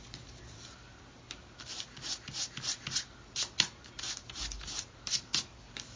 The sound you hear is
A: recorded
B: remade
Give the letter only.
A